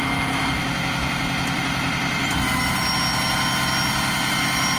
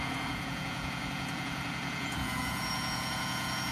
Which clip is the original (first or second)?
first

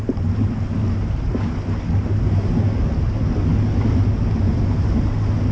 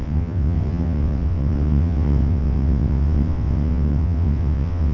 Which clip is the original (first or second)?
first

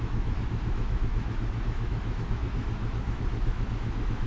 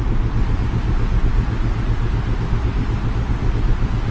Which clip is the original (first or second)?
second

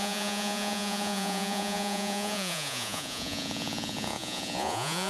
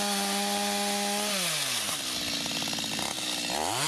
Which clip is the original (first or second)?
second